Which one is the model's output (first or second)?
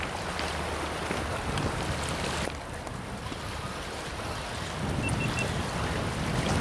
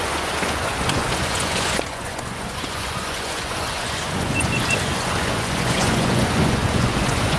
second